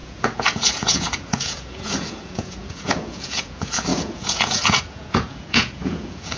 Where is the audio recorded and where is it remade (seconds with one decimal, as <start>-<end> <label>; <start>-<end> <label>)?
0.0-6.4 remade